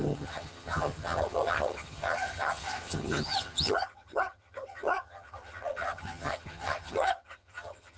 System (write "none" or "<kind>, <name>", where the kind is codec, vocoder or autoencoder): vocoder, HiFi-GAN